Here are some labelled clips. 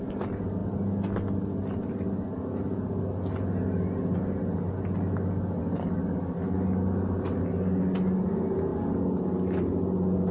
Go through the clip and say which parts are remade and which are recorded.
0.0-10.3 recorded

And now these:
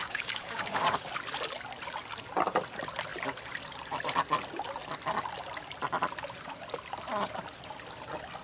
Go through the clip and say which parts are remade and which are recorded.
0.0-1.1 remade; 1.1-8.4 recorded

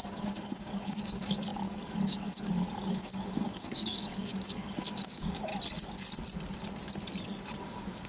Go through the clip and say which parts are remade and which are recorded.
0.0-5.5 remade; 5.5-7.6 recorded; 7.6-8.1 remade

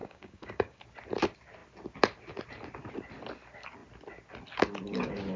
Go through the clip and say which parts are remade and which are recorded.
0.0-0.8 remade; 0.8-5.4 recorded

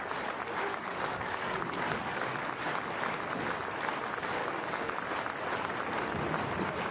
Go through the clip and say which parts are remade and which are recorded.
0.0-0.7 recorded; 0.7-2.8 remade; 2.8-4.4 recorded; 4.4-5.0 remade; 5.0-6.9 recorded

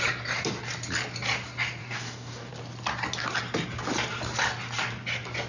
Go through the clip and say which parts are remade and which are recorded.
0.0-1.8 recorded; 1.8-2.5 remade; 2.5-5.5 recorded

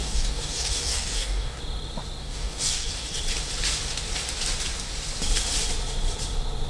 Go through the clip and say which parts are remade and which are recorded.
0.0-1.6 remade; 1.6-2.2 recorded; 2.2-3.2 remade; 3.2-6.7 recorded

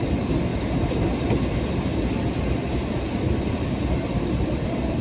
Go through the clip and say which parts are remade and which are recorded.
0.0-5.0 recorded